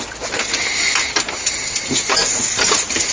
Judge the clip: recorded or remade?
recorded